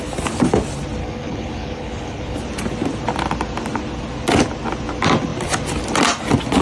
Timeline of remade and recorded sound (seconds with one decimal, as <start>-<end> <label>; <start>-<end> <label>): 0.0-1.0 recorded; 1.0-2.4 remade; 2.4-6.6 recorded